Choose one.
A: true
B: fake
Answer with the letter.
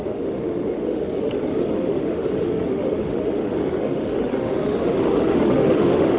B